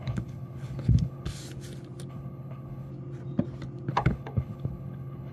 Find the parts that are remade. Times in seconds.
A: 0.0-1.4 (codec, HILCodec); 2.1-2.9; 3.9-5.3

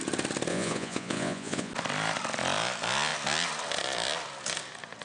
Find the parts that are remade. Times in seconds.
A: 0.5-1.7 (vocoder, Vocos)

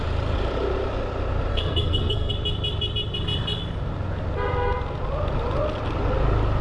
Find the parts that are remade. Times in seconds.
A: 1.5-2.3 (codec, SNAC)

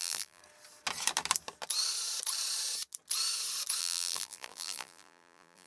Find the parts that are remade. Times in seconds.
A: 0.0-0.4 (vocoder, BigVGAN v2); 3.8-5.7

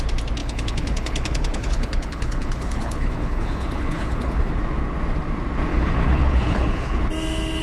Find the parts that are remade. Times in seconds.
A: 0.4-4.5 (codec, HILCodec); 5.7-7.0